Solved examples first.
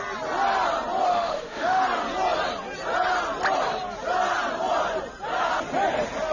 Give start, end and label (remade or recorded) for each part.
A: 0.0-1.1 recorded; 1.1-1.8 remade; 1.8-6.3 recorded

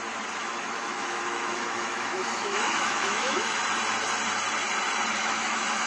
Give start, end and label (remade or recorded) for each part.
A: 0.0-0.4 recorded; 0.4-3.6 remade; 3.6-5.2 recorded; 5.2-5.9 remade